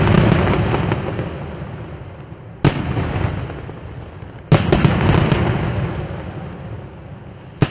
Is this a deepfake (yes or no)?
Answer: no